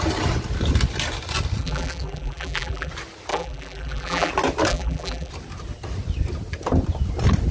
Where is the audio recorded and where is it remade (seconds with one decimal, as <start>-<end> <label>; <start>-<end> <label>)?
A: 0.0-1.6 recorded; 1.6-2.9 remade; 2.9-3.3 recorded; 3.3-4.3 remade; 4.3-4.7 recorded; 4.7-5.3 remade; 5.3-7.5 recorded